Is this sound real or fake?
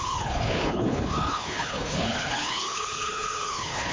fake